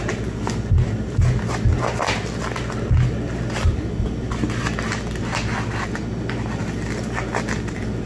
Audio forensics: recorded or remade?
recorded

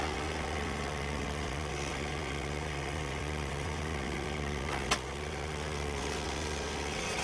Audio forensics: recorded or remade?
remade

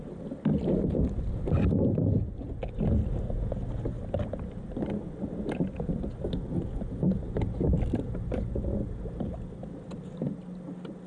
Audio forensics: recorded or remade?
recorded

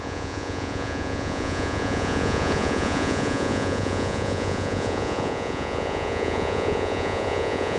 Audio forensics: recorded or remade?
remade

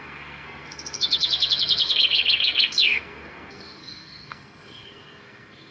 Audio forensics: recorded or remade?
remade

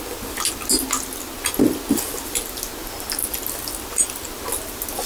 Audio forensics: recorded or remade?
recorded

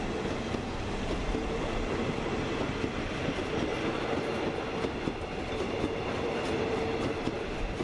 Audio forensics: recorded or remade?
recorded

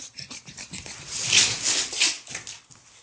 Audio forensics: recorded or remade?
recorded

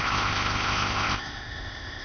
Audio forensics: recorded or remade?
remade